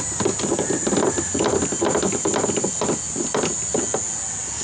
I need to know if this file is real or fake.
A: real